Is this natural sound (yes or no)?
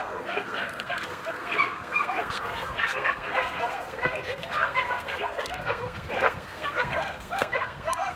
no